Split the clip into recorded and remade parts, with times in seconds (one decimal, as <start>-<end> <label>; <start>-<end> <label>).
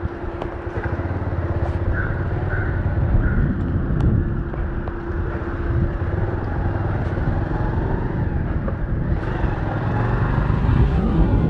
0.0-10.6 recorded; 10.6-11.5 remade